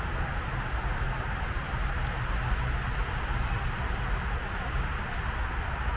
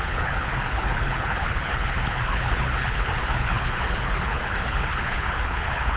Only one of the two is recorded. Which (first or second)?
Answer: first